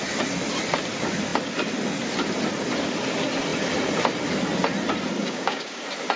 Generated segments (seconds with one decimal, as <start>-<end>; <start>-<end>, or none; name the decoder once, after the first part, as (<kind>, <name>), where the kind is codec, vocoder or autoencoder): 5.2-5.8 (codec, DAC)